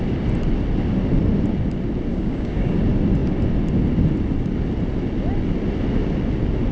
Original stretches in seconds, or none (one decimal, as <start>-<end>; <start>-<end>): 0.0-2.1; 2.8-6.7